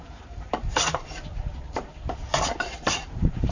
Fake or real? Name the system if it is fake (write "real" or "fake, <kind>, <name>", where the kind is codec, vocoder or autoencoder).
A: fake, vocoder, BigVGAN v2